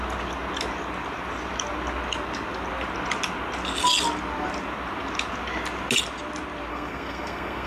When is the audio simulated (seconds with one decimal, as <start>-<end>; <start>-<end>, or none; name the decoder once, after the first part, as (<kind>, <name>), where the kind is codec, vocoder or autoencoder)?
6.7-7.7 (codec, SNAC)